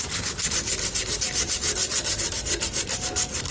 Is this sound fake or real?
real